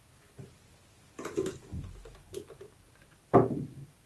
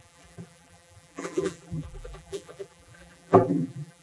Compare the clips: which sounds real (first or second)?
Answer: first